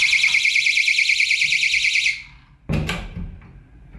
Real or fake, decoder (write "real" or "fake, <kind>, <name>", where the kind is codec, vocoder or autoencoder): real